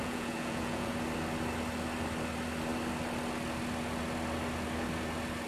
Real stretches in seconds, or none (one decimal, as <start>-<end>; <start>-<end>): 0.9-5.5